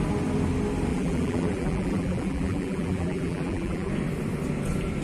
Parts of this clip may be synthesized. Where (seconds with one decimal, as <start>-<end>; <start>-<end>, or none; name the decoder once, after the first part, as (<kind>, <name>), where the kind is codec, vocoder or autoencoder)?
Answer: 0.9-3.9 (vocoder, BigVGAN v2)